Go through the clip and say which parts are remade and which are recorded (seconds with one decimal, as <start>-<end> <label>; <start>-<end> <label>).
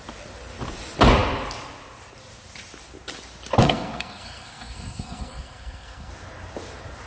0.0-3.6 recorded; 3.6-6.1 remade; 6.1-7.1 recorded